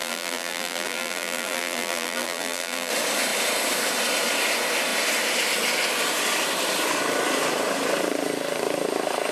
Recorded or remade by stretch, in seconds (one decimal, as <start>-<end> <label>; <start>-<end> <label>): 0.0-2.9 remade; 2.9-9.3 recorded